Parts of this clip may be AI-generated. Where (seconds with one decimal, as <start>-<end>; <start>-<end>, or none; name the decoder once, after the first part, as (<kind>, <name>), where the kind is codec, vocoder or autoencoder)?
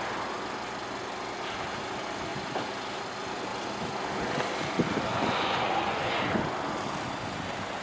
5.1-6.2 (vocoder, Vocos)